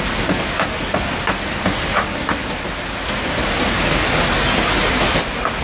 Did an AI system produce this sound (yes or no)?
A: no